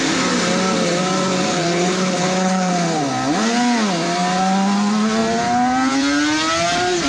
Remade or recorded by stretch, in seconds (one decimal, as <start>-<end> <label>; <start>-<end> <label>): 0.0-1.5 recorded; 1.5-2.7 remade; 2.7-7.1 recorded